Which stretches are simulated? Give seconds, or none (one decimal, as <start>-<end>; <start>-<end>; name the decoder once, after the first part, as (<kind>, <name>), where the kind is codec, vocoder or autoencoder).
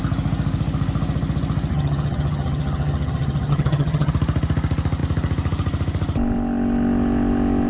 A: 1.7-4.1 (vocoder, HiFi-GAN)